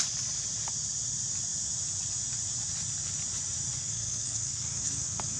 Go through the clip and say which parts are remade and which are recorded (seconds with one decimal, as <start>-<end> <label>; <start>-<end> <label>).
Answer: 0.0-3.8 recorded; 3.8-5.4 remade